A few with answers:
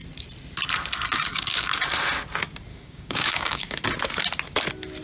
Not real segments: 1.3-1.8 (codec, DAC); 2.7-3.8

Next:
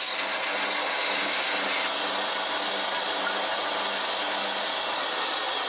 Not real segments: 0.8-1.6 (codec, DAC)

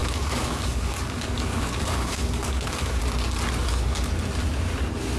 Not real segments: 0.0-3.0 (codec, DAC)

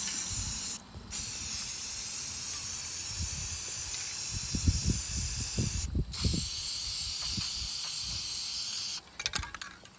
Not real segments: none